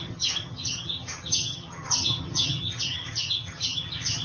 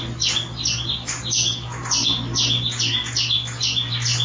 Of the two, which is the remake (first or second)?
first